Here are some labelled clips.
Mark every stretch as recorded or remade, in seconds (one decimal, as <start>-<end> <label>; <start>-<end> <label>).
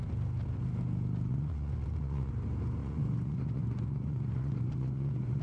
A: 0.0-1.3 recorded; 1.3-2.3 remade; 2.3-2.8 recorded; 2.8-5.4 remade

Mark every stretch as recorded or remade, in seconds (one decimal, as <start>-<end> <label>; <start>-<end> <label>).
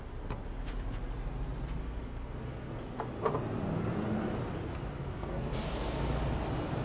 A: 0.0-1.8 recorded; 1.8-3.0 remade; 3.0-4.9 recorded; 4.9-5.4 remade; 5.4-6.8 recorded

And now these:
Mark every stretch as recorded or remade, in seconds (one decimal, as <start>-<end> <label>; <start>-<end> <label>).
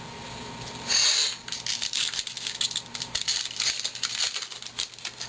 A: 0.0-5.3 recorded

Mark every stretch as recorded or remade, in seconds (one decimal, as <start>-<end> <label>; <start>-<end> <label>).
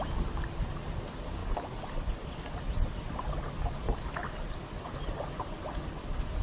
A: 0.0-1.4 recorded; 1.4-5.2 remade; 5.2-6.4 recorded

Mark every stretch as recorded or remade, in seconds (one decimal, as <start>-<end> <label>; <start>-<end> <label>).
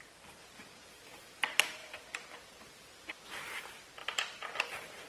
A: 0.0-1.8 recorded; 1.8-2.4 remade; 2.4-4.0 recorded; 4.0-5.1 remade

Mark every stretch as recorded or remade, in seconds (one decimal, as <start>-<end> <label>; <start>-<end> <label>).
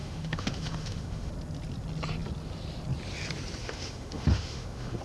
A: 0.0-1.3 remade; 1.3-3.6 recorded; 3.6-5.0 remade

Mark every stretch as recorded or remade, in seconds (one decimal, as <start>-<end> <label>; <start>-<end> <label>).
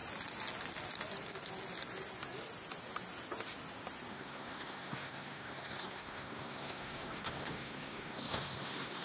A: 0.0-4.1 recorded; 4.1-9.0 remade